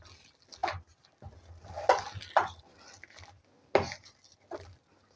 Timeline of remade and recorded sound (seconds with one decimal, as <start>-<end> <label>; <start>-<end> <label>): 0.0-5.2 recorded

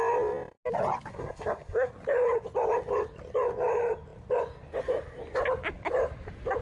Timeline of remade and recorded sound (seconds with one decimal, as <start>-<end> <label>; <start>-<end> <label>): 0.0-1.1 recorded; 1.1-1.9 remade; 1.9-6.6 recorded

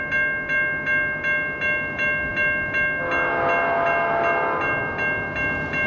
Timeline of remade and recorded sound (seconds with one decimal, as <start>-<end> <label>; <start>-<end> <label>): 0.0-5.9 recorded